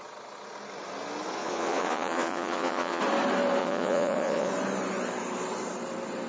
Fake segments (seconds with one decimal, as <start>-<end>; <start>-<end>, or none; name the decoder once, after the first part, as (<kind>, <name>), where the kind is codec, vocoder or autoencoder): 1.4-3.0 (vocoder, Vocos); 3.6-4.5

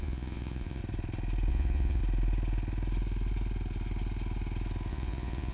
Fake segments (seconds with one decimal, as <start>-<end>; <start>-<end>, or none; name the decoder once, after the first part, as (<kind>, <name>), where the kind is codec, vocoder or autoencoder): 0.0-0.8 (vocoder, Vocos); 1.5-2.0; 4.9-5.5

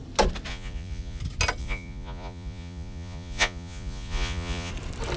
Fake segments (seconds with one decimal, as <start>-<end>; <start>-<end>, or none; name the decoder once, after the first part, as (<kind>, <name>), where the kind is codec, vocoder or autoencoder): 0.5-1.2 (vocoder, Vocos); 1.6-4.7

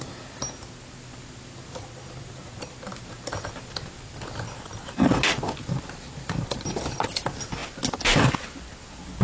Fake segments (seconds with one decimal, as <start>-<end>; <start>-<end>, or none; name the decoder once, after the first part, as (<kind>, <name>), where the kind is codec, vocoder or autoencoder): none

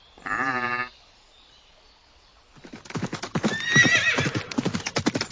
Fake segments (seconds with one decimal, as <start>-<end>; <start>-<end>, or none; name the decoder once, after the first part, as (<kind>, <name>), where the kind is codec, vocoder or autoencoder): none

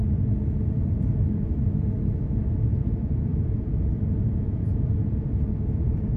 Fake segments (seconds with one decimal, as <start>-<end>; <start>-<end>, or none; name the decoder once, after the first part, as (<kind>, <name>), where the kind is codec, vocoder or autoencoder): 0.6-1.1 (vocoder, Vocos); 2.5-6.2

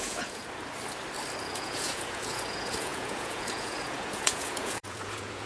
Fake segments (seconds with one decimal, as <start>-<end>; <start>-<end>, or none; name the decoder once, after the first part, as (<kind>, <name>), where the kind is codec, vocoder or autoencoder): 0.0-0.4 (vocoder, Vocos); 1.4-5.5